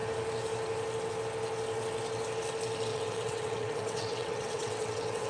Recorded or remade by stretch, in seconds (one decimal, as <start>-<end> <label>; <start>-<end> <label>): 0.0-2.9 recorded; 2.9-5.3 remade